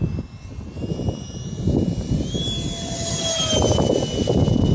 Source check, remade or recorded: recorded